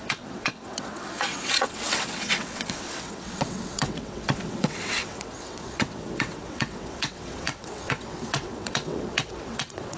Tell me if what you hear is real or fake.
fake